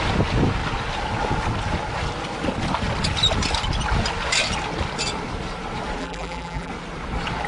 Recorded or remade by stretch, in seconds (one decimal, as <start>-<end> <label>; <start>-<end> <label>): 0.0-6.0 recorded; 6.0-6.7 remade; 6.7-7.5 recorded